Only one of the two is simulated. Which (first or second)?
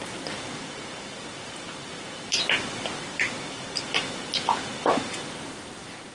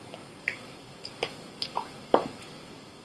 second